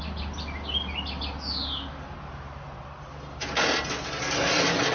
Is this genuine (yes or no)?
yes